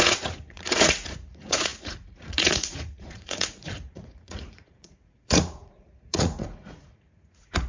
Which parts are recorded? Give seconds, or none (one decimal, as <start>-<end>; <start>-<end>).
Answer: none